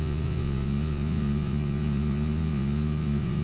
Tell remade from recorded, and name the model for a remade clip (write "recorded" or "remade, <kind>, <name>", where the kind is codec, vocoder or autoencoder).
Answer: remade, vocoder, Vocos